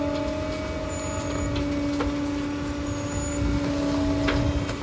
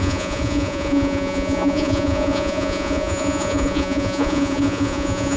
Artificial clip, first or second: second